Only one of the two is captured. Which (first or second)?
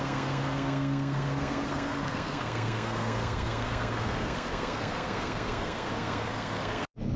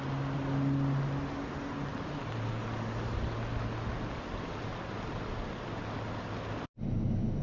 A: second